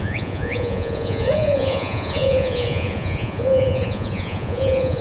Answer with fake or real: fake